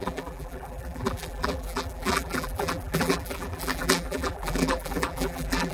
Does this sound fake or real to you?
fake